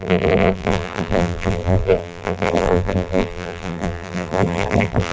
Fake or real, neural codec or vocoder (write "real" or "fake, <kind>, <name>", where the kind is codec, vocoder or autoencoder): fake, vocoder, BigVGAN v2